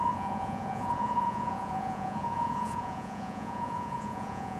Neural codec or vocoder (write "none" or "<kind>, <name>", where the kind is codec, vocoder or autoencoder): vocoder, Vocos